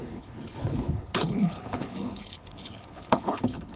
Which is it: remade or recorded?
remade